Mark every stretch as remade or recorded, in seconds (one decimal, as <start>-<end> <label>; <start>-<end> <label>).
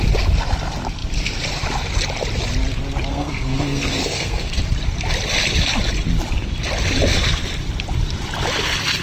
0.0-3.1 recorded; 3.1-4.6 remade; 4.6-9.0 recorded